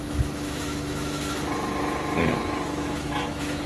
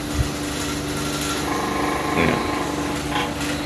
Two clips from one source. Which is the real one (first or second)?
second